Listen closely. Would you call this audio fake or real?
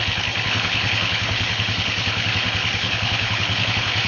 fake